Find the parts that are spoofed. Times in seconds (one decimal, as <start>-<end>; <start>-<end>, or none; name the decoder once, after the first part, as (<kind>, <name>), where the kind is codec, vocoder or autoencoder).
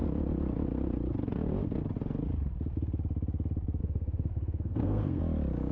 3.8-5.2 (codec, SNAC)